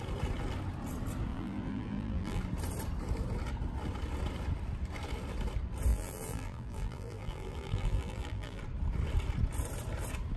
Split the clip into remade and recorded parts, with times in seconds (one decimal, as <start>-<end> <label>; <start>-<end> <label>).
0.0-1.3 recorded; 1.3-2.4 remade; 2.4-5.9 recorded; 5.9-8.6 remade; 8.6-10.4 recorded